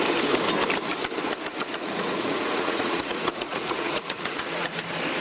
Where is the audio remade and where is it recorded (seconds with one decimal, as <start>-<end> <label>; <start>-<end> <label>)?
0.0-1.6 recorded; 1.6-4.7 remade; 4.7-5.2 recorded